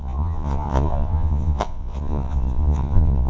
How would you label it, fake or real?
fake